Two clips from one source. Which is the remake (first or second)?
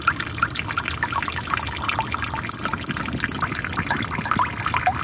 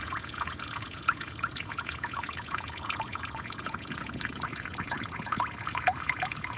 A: second